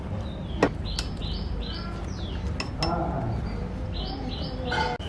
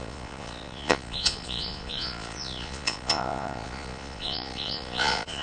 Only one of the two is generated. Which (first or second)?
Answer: second